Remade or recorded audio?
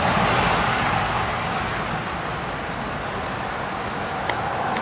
recorded